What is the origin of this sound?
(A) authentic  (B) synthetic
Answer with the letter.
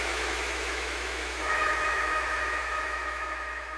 B